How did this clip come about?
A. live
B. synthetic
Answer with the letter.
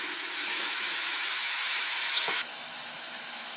B